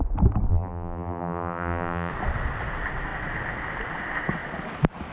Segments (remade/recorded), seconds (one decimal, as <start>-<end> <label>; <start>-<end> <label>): 0.0-0.5 recorded; 0.5-2.1 remade; 2.1-5.1 recorded